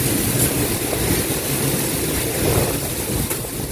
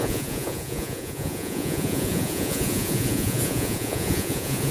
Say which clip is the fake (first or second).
second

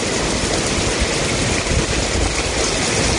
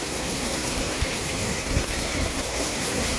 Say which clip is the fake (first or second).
second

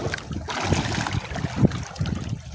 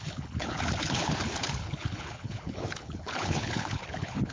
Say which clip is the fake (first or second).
second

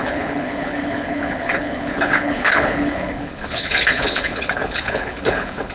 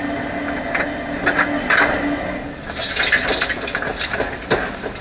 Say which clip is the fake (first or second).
first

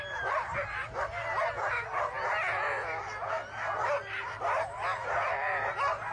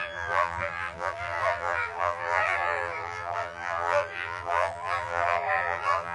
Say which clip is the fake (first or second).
second